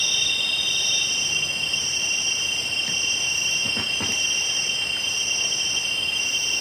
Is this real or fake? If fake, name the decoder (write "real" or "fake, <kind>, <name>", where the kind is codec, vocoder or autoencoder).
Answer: real